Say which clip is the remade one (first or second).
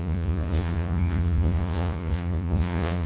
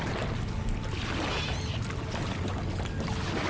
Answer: first